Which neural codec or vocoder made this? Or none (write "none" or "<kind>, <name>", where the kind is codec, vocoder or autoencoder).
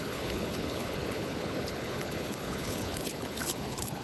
codec, HILCodec